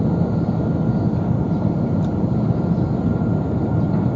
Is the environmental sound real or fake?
fake